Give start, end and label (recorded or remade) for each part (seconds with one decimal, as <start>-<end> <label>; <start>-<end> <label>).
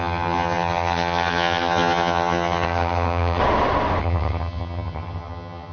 0.0-3.4 remade; 3.4-4.0 recorded; 4.0-5.7 remade